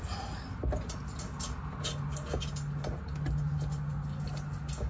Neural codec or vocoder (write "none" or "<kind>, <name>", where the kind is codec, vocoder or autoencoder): none